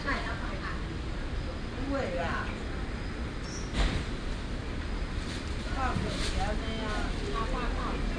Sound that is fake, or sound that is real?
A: real